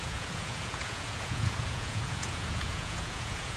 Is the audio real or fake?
fake